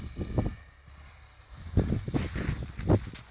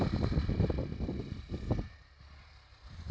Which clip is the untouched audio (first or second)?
first